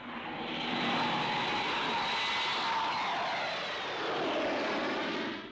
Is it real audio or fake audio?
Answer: real